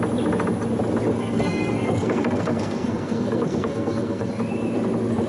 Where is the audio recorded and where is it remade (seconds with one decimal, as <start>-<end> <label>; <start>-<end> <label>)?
0.0-1.1 recorded; 1.1-4.3 remade; 4.3-5.3 recorded